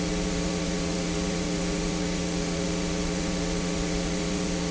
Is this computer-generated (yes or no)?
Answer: yes